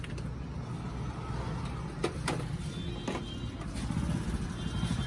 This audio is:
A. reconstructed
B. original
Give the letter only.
B